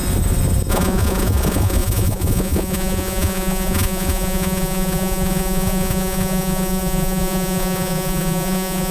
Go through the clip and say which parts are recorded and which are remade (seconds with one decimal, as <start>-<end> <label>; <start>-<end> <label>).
0.0-0.7 recorded; 0.7-8.9 remade